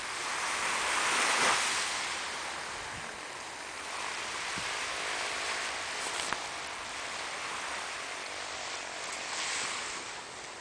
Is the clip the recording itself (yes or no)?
yes